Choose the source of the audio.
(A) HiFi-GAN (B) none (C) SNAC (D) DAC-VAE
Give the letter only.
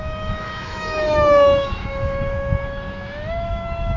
D